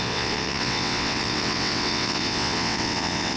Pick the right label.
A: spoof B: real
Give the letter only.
A